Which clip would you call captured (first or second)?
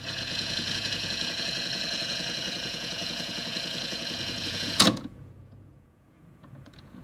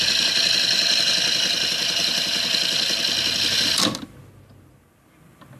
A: second